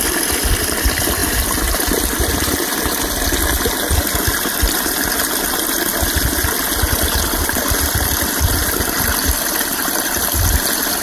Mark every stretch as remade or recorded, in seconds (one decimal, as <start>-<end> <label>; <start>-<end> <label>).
0.0-1.2 recorded; 1.2-2.2 remade; 2.2-11.0 recorded